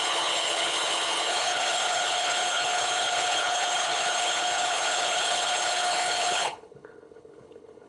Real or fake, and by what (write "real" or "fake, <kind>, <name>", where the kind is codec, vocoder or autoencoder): fake, codec, HILCodec